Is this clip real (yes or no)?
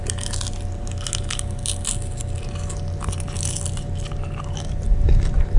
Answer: yes